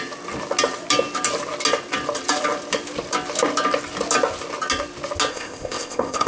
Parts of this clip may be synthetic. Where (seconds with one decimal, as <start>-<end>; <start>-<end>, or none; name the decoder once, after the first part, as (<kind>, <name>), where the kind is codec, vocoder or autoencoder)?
5.3-6.3 (codec, ZipCodec)

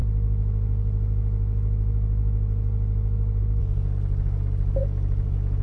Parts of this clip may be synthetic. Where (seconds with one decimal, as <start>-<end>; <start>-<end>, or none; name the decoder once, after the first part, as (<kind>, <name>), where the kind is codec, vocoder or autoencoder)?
4.8-5.6 (vocoder, BigVGAN v2)

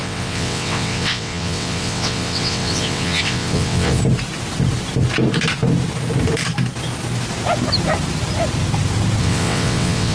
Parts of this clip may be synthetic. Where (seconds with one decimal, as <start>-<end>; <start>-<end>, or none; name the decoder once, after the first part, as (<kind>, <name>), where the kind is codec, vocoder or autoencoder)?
0.0-4.0 (vocoder, WaveNeXt); 9.2-10.1

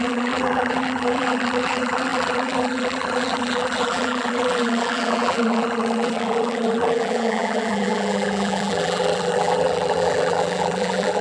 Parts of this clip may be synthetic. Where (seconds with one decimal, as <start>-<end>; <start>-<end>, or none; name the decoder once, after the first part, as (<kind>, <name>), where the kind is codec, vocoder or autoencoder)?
0.0-11.2 (vocoder, BigVGAN v2)

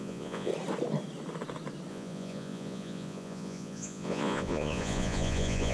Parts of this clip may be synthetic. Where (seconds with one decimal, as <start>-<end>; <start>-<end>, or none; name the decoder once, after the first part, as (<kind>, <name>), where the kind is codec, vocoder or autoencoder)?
0.0-0.5 (vocoder, Vocos); 1.9-5.7

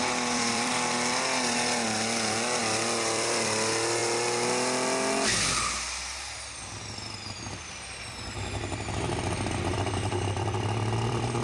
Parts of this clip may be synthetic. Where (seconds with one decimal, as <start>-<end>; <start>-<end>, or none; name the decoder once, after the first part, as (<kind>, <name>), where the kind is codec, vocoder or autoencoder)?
0.0-0.7 (vocoder, BigVGAN v2); 2.6-4.0; 7.7-11.4

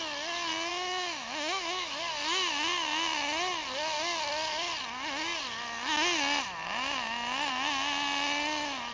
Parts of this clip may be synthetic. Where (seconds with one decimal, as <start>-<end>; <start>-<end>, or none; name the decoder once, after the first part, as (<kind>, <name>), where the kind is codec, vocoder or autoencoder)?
0.7-2.0 (autoencoder, DAC-VAE)